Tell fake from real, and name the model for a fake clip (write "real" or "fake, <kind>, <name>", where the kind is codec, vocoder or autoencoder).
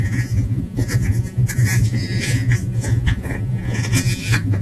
fake, vocoder, Vocos